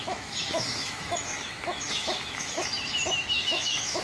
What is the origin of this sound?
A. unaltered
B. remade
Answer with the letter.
B